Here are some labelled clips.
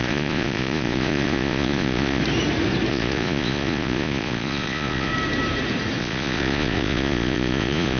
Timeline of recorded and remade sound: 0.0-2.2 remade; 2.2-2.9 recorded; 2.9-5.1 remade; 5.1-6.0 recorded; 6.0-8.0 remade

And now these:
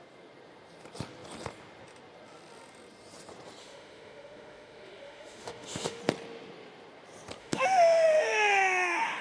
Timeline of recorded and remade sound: 0.0-3.6 recorded; 3.6-6.0 remade; 6.0-7.4 recorded; 7.4-9.2 remade

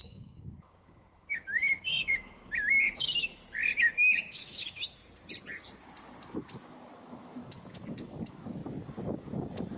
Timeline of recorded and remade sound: 0.0-3.3 remade; 3.3-3.9 recorded; 3.9-5.0 remade; 5.0-7.0 recorded; 7.0-8.6 remade; 8.6-9.8 recorded

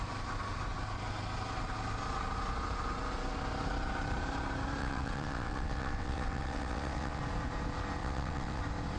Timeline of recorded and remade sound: 0.0-4.8 recorded; 4.8-7.2 remade; 7.2-8.0 recorded; 8.0-8.6 remade; 8.6-9.0 recorded

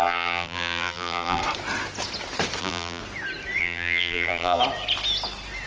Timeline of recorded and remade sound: 0.0-1.4 remade; 1.4-2.6 recorded; 2.6-3.0 remade; 3.0-3.6 recorded; 3.6-4.6 remade; 4.6-5.7 recorded

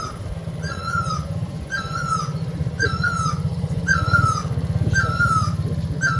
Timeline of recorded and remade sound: 0.0-0.7 recorded; 0.7-4.4 remade; 4.4-6.2 recorded

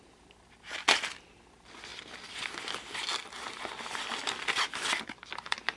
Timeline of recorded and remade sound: 0.0-5.8 recorded